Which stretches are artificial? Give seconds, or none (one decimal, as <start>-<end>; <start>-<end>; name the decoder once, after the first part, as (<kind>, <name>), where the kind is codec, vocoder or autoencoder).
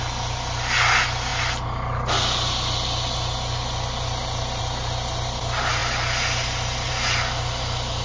none